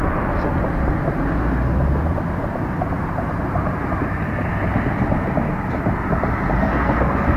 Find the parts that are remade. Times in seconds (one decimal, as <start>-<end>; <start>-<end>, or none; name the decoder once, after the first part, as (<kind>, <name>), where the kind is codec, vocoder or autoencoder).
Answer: 6.6-7.4 (codec, SNAC)